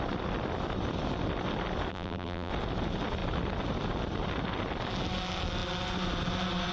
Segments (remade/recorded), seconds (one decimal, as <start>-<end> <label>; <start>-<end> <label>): 0.0-1.9 recorded; 1.9-2.5 remade; 2.5-6.7 recorded